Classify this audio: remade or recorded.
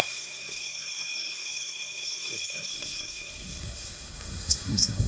remade